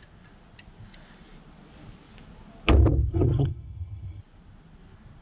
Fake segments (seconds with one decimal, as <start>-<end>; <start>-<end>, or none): 3.1-4.2